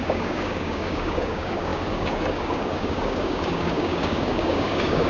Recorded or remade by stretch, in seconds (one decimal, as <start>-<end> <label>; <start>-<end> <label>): 0.0-5.1 remade